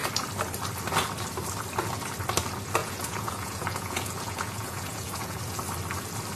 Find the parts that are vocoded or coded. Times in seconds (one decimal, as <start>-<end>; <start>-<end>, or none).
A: 2.8-5.4